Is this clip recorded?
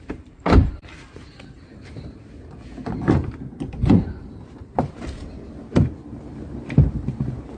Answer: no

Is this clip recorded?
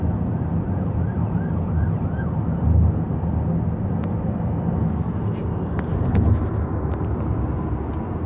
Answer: yes